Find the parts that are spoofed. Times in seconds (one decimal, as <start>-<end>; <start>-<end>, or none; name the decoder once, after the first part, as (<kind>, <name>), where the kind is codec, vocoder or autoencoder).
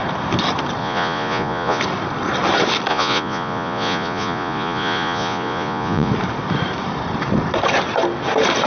0.8-1.8 (vocoder, Vocos); 2.9-6.1